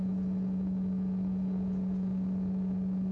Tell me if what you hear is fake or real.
fake